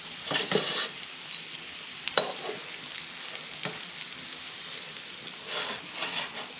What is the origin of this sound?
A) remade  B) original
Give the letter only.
A